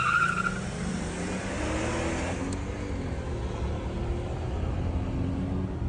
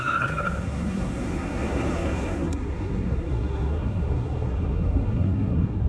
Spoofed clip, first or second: second